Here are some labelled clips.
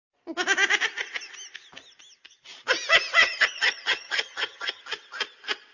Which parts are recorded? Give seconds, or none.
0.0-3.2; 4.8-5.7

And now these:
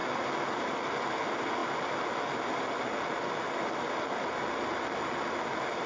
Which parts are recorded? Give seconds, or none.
0.0-5.9

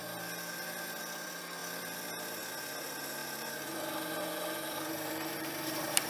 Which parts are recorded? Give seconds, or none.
0.0-3.2